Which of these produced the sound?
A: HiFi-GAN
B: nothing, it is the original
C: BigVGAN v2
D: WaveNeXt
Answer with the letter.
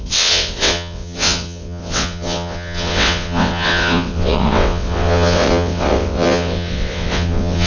D